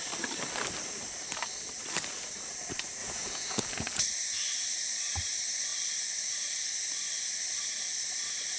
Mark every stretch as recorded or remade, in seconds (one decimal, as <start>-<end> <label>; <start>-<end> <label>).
0.0-3.0 recorded; 3.0-4.0 remade; 4.0-8.6 recorded